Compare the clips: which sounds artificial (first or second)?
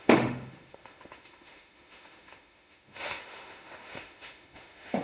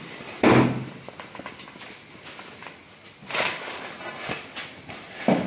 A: first